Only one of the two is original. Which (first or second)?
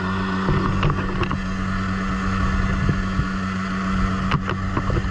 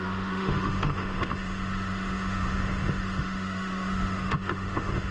first